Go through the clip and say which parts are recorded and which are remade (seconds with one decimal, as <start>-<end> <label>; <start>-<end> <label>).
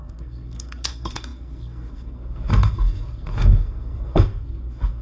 0.0-5.0 remade